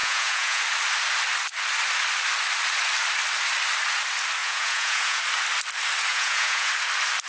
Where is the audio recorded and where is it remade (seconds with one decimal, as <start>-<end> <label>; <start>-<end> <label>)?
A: 0.0-0.6 remade; 0.6-4.4 recorded; 4.4-5.2 remade; 5.2-6.1 recorded; 6.1-6.7 remade; 6.7-7.3 recorded